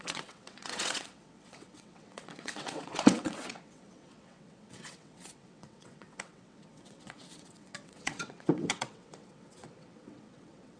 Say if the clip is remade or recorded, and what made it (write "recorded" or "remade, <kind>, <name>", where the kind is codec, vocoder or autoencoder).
remade, vocoder, WaveNeXt